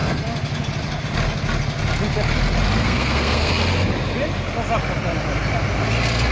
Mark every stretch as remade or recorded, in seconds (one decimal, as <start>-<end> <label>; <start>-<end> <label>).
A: 0.0-2.8 recorded; 2.8-3.5 remade; 3.5-6.3 recorded